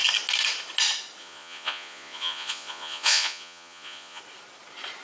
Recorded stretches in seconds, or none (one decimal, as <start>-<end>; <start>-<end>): 0.0-1.2; 4.2-5.0